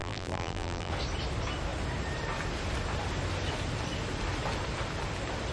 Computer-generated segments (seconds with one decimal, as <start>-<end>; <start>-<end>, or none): 0.0-0.9